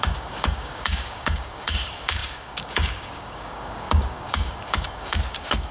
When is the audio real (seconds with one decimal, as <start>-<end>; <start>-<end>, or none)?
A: none